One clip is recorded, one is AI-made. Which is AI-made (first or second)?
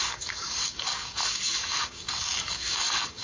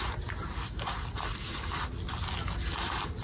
first